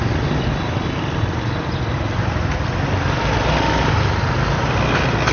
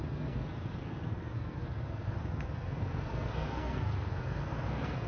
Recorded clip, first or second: first